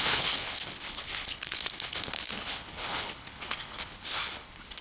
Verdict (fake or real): fake